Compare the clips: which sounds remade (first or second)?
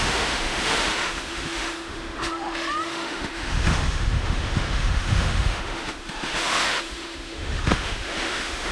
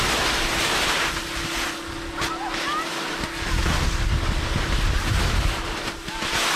first